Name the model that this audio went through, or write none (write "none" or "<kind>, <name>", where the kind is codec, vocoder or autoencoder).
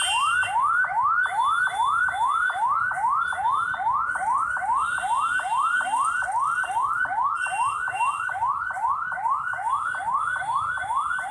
none